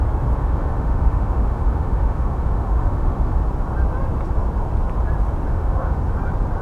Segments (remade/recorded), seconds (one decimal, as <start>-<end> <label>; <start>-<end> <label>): 0.0-0.4 recorded; 0.4-3.4 remade; 3.4-5.5 recorded; 5.5-6.0 remade; 6.0-6.6 recorded